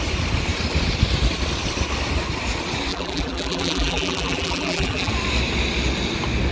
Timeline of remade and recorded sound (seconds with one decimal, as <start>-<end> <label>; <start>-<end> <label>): 0.0-2.9 recorded; 2.9-5.1 remade; 5.1-6.5 recorded